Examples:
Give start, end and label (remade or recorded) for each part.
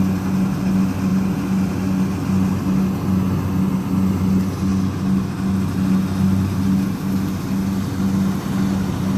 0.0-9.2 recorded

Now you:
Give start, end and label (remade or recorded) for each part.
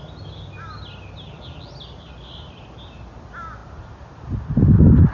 0.0-5.1 recorded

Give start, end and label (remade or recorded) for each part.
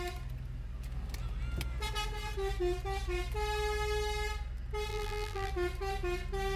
0.0-4.9 recorded; 4.9-5.5 remade; 5.5-6.6 recorded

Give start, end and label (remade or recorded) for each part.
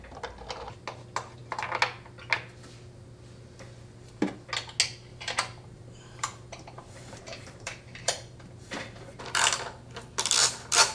0.0-5.1 recorded; 5.1-9.2 remade; 9.2-10.9 recorded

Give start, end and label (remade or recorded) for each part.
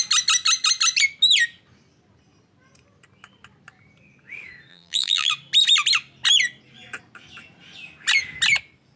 0.0-4.7 recorded; 4.7-5.3 remade; 5.3-9.0 recorded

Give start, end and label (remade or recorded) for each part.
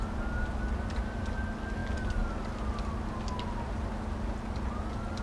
0.0-5.2 recorded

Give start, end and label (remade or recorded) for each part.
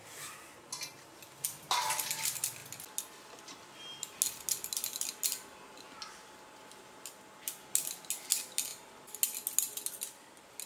0.0-10.7 recorded